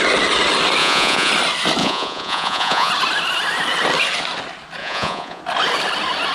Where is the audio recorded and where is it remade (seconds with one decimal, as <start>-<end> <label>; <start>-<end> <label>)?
0.0-0.8 recorded; 0.8-1.3 remade; 1.3-1.8 recorded; 1.8-2.9 remade; 2.9-4.8 recorded; 4.8-5.4 remade; 5.4-6.3 recorded

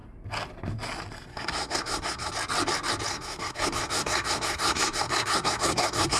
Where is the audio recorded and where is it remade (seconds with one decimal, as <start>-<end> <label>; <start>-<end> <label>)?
0.0-1.3 recorded; 1.3-2.3 remade; 2.3-3.1 recorded; 3.1-6.2 remade